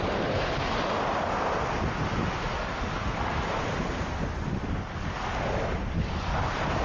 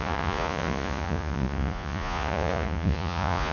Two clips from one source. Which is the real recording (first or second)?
first